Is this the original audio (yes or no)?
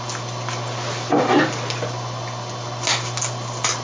yes